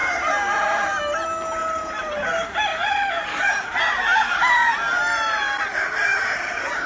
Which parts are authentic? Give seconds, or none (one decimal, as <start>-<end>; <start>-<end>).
0.0-1.6; 2.3-2.7; 3.4-6.1